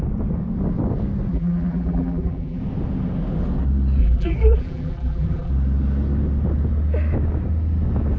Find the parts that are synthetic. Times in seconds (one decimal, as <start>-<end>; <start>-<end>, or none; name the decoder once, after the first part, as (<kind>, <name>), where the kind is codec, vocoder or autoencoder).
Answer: 1.3-2.6 (vocoder, BigVGAN v2); 4.0-5.5